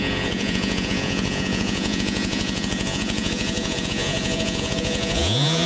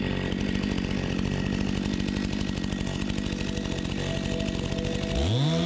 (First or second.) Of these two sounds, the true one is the second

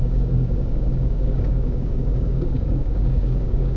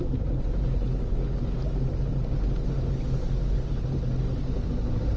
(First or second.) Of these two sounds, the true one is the second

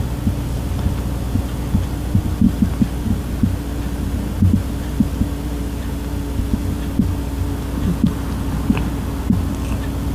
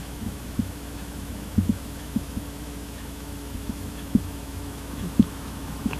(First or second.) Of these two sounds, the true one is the first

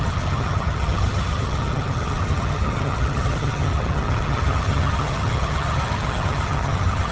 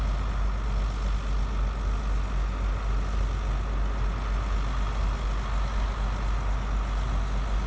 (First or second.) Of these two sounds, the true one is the second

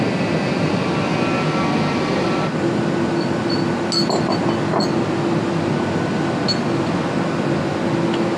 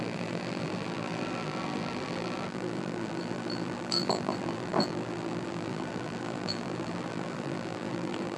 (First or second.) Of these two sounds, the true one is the first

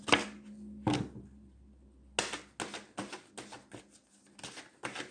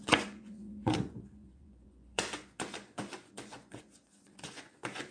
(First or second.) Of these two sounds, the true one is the first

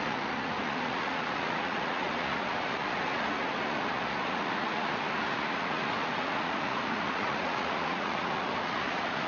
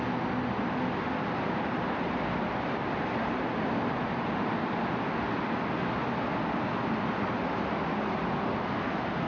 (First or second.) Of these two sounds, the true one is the second